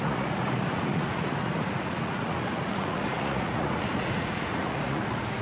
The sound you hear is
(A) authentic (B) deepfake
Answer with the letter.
B